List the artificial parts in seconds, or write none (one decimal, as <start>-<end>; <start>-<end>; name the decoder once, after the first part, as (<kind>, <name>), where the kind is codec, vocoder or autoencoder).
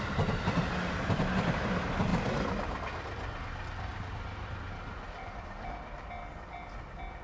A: none